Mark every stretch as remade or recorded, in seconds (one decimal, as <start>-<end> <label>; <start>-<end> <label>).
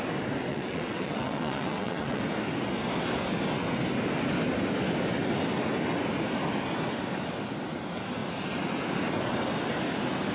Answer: 0.0-0.5 recorded; 0.5-2.2 remade; 2.2-10.3 recorded